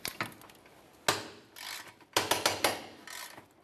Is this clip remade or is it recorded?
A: recorded